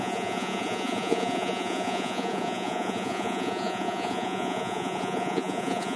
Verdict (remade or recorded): remade